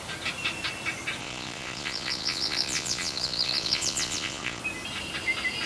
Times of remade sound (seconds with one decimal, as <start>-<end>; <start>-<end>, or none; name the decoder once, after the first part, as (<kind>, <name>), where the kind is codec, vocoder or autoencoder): 1.2-4.6 (vocoder, Vocos)

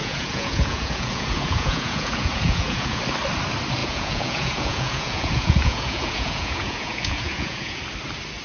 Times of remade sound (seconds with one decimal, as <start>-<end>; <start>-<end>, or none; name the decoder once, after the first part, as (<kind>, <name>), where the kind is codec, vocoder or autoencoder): 0.0-3.0 (vocoder, Vocos); 3.8-7.8

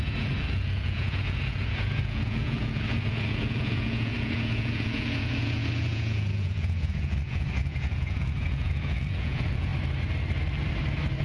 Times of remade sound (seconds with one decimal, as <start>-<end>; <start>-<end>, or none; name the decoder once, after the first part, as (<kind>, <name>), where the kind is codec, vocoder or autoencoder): 0.0-9.7 (vocoder, Vocos)

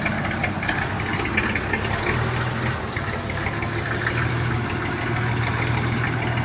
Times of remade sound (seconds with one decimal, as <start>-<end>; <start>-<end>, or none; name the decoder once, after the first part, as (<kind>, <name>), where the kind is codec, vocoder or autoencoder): none